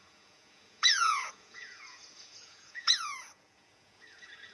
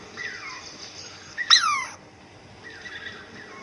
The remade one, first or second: first